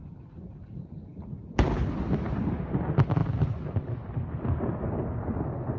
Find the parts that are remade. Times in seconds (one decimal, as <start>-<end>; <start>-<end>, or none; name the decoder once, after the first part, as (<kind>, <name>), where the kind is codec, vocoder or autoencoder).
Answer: none